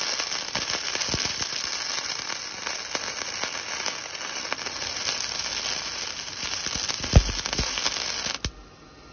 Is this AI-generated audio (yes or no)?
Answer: no